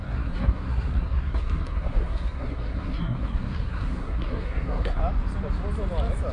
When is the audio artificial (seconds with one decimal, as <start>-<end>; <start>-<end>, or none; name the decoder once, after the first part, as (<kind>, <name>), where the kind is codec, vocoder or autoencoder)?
0.0-5.0 (codec, SNAC)